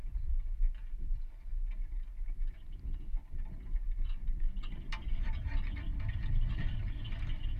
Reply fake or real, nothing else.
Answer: real